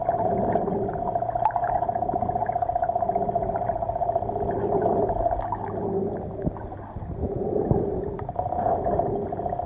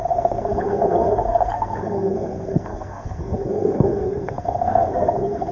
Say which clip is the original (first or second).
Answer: first